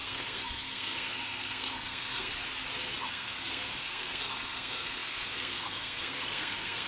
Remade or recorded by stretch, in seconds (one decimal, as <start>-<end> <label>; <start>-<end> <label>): 0.0-2.3 remade; 2.3-3.1 recorded; 3.1-6.9 remade